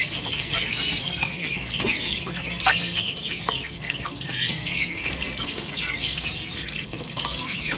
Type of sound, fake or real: fake